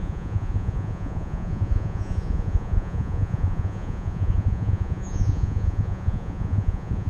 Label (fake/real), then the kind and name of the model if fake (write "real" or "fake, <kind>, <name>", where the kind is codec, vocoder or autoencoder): fake, vocoder, Vocos